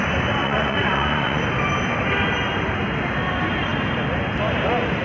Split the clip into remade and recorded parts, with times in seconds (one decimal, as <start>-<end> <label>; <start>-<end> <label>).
0.0-0.4 recorded; 0.4-1.4 remade; 1.4-5.0 recorded